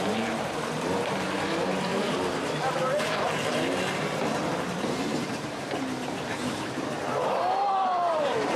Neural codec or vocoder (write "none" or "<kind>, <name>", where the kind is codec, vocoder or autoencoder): vocoder, BigVGAN v2